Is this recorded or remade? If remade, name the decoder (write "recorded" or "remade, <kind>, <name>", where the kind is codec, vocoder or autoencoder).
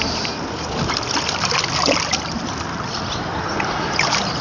recorded